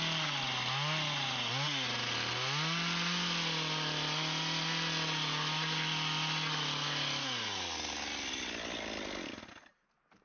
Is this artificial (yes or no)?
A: no